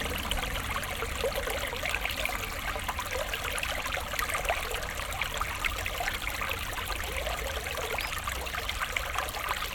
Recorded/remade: recorded